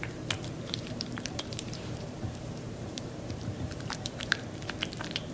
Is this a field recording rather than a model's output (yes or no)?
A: no